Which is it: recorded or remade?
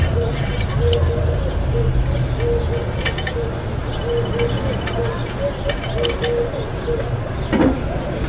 recorded